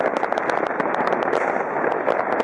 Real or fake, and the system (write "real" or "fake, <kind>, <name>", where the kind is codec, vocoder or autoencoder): real